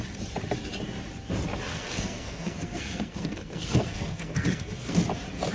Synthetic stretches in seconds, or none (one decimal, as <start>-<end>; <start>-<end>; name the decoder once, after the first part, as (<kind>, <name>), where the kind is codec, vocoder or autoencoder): 1.7-5.0 (codec, SNAC)